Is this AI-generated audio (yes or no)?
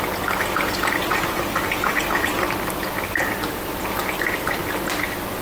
no